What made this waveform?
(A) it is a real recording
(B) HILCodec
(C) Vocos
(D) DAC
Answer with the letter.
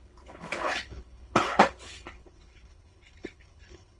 B